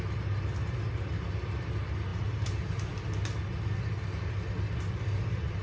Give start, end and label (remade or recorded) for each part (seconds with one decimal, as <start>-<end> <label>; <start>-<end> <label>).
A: 0.0-5.6 recorded